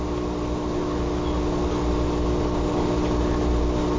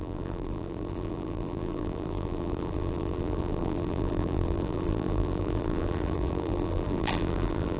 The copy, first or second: second